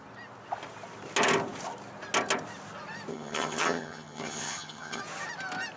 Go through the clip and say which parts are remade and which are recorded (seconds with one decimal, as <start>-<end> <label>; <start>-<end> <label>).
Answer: 0.0-3.1 recorded; 3.1-5.0 remade; 5.0-5.8 recorded